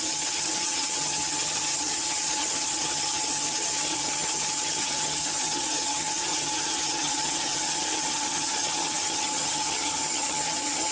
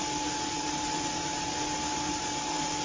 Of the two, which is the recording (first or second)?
second